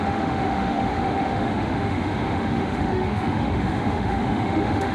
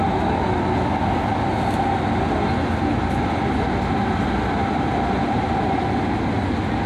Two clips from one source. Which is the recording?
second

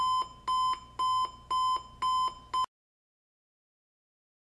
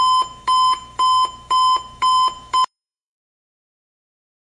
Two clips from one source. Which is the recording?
first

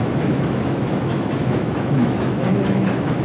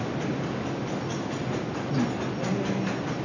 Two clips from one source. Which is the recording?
second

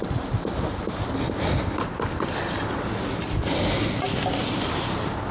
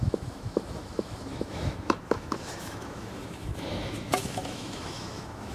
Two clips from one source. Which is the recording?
first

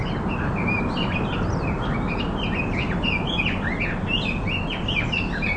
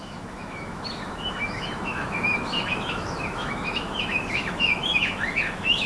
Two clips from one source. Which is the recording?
first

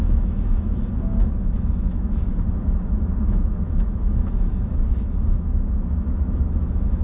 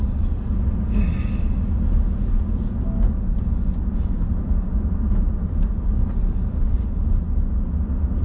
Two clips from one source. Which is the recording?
second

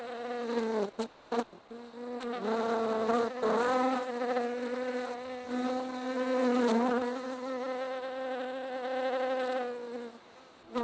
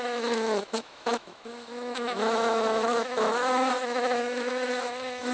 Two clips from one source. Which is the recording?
first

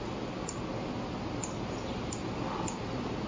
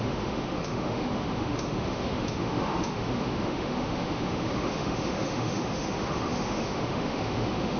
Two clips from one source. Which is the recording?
first